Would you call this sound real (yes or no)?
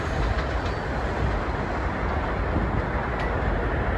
yes